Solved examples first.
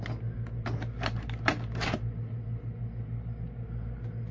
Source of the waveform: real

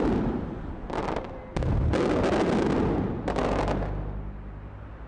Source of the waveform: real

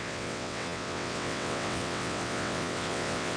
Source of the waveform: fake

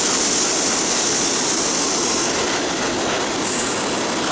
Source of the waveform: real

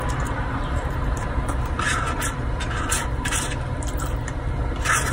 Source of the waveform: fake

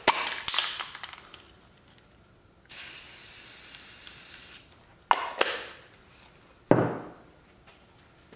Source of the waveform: real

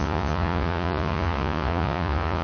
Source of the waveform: fake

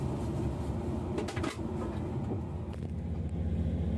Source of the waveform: real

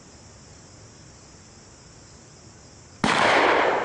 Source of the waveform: real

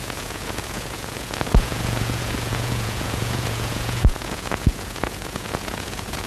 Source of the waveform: fake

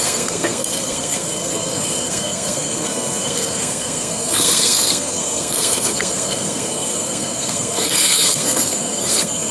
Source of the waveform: fake